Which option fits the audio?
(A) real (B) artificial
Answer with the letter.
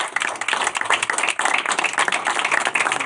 A